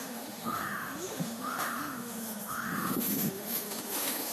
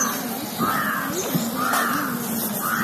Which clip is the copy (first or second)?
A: first